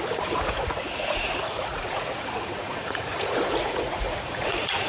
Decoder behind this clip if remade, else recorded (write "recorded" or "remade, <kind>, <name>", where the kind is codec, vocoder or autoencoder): remade, vocoder, Vocos